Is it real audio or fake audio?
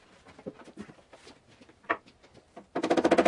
real